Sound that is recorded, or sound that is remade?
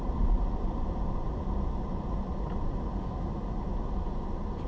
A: recorded